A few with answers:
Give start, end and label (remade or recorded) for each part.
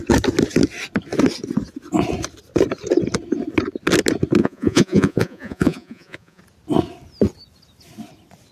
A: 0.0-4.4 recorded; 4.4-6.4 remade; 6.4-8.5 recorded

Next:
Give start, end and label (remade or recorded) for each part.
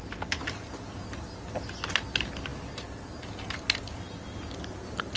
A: 0.0-5.2 recorded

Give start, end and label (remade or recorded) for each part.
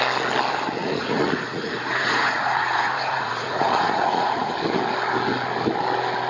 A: 0.0-0.8 recorded; 0.8-4.5 remade; 4.5-6.3 recorded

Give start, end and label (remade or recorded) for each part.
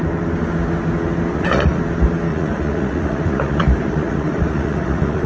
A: 0.0-1.3 recorded; 1.3-1.8 remade; 1.8-2.3 recorded; 2.3-5.3 remade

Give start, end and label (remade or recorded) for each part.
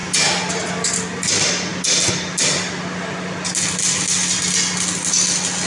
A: 0.0-5.7 recorded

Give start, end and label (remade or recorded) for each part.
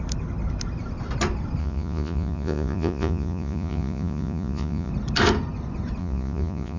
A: 0.0-1.6 recorded; 1.6-4.9 remade; 4.9-6.0 recorded; 6.0-6.8 remade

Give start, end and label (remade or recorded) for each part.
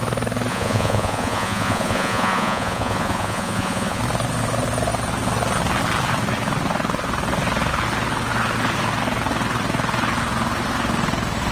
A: 0.0-0.5 recorded; 0.5-4.0 remade; 4.0-11.5 recorded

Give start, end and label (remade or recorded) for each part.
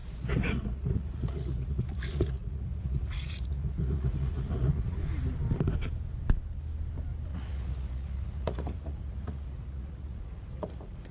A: 0.0-5.0 remade; 5.0-7.3 recorded; 7.3-11.1 remade